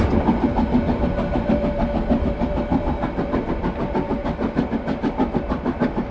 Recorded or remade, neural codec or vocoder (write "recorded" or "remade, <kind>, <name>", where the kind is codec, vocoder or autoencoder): recorded